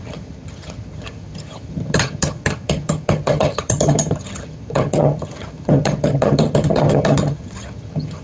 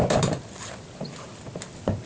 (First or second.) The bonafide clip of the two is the second